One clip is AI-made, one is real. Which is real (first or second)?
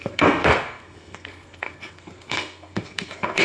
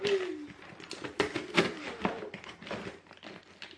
second